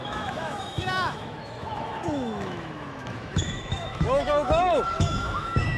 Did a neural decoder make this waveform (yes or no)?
yes